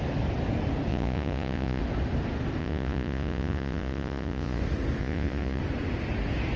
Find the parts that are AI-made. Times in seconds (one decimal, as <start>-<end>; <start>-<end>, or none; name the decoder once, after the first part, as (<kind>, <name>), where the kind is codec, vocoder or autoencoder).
0.9-1.8 (vocoder, Vocos); 2.6-4.6; 5.0-5.6